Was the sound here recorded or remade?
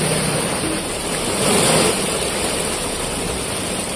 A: recorded